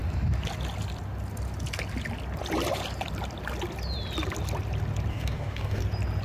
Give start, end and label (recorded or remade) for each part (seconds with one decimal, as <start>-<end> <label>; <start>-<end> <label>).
0.0-5.1 recorded; 5.1-5.8 remade; 5.8-6.2 recorded